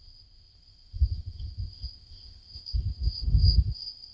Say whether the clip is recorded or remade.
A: remade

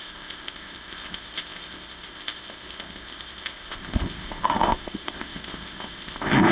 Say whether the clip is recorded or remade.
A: remade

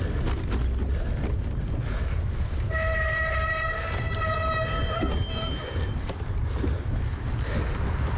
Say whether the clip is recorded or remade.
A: recorded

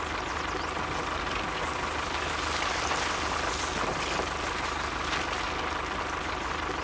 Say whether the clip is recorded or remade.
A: recorded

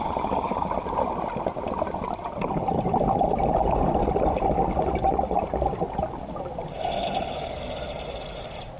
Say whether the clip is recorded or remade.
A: recorded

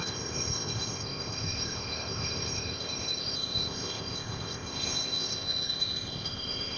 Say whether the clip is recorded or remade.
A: remade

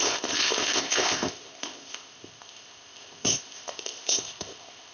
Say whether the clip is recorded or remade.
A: remade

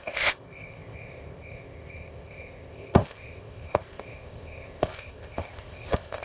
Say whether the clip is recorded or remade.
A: remade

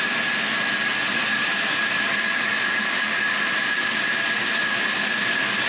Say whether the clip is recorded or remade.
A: recorded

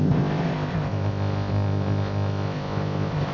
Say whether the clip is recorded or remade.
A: remade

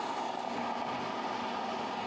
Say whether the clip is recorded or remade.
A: recorded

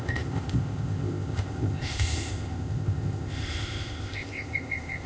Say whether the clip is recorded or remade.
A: remade